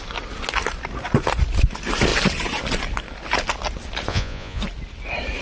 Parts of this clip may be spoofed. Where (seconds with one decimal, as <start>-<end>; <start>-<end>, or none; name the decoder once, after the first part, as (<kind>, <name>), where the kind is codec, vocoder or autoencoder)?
4.1-4.6 (vocoder, Vocos)